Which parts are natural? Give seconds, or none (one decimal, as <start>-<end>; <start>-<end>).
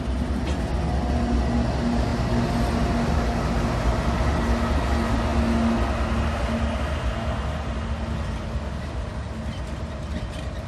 0.0-10.7